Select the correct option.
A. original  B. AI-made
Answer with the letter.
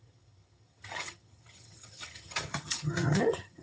B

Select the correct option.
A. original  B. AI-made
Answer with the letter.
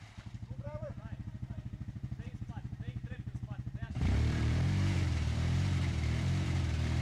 B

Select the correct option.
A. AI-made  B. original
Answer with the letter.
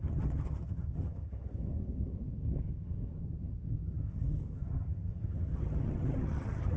A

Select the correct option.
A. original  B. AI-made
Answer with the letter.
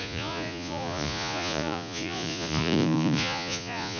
B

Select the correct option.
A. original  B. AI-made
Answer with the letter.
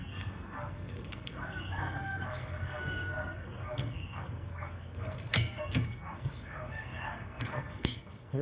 B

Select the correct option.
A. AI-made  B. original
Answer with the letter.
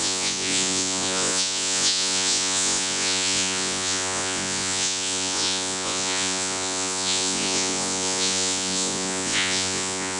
A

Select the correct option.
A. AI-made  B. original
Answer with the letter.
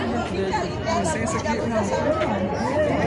B